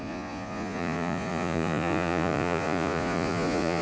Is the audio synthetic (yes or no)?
yes